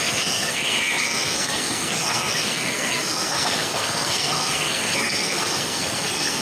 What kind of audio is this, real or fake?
fake